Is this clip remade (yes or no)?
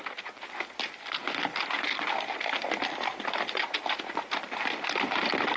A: no